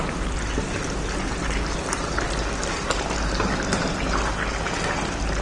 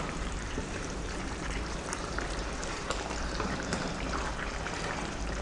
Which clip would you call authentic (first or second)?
first